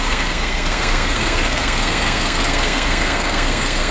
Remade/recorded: remade